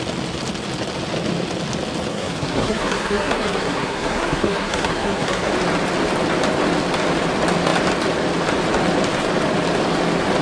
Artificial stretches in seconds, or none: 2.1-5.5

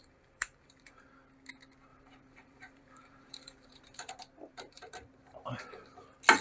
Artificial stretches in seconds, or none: 0.0-1.1; 1.9-4.1; 4.5-5.1

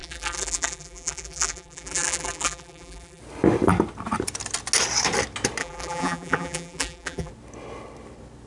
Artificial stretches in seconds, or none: 0.0-3.2; 5.6-7.3